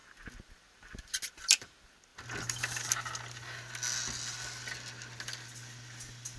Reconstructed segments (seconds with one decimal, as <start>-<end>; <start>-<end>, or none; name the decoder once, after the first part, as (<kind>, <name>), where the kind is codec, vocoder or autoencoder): none